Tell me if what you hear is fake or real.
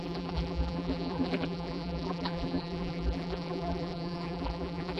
fake